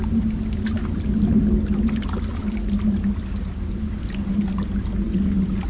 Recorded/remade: recorded